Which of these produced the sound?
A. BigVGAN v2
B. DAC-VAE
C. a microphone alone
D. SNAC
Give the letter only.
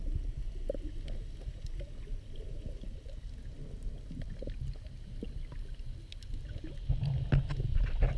C